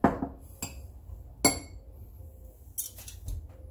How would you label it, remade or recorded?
recorded